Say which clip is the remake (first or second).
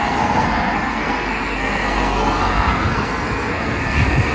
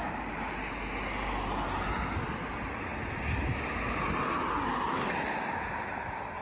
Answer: first